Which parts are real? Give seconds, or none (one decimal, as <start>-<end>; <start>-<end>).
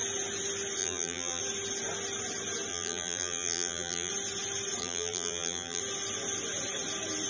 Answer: 0.0-0.8; 1.4-2.7; 4.1-4.8; 5.8-7.3